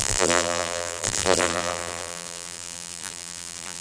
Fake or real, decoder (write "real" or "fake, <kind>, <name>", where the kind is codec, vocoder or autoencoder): fake, vocoder, BigVGAN v2